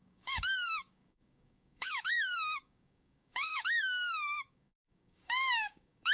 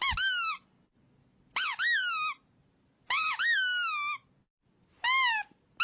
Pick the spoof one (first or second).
first